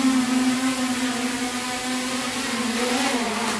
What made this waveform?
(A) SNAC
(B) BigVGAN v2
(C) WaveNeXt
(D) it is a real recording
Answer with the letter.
D